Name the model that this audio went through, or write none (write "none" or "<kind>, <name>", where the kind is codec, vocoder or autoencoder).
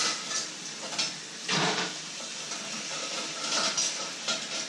none